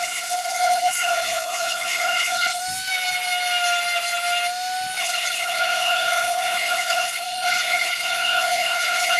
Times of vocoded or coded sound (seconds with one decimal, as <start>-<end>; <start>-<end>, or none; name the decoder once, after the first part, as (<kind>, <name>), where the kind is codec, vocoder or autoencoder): 0.0-2.6 (codec, HILCodec); 5.0-9.2